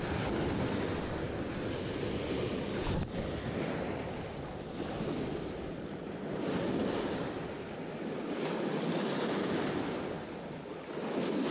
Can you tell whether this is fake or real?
real